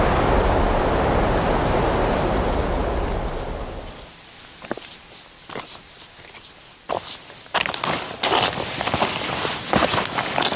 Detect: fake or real real